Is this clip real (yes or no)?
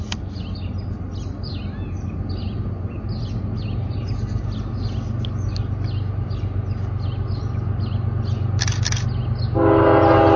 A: yes